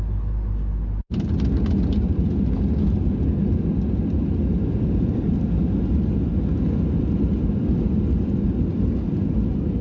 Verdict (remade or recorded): recorded